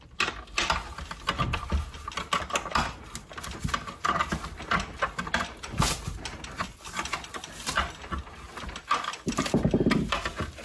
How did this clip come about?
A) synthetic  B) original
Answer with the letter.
B